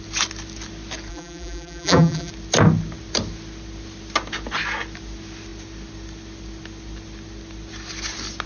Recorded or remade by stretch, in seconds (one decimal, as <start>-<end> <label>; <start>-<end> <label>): 0.0-1.1 recorded; 1.1-2.3 remade; 2.3-8.5 recorded